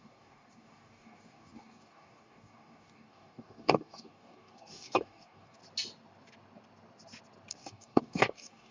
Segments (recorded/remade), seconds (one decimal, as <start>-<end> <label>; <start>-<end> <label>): 0.0-5.6 remade; 5.6-7.5 recorded; 7.5-8.7 remade